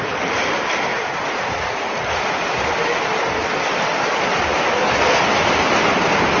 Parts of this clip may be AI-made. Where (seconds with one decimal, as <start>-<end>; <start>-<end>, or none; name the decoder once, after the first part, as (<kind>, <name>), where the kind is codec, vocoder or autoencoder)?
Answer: 0.9-2.0 (vocoder, Vocos)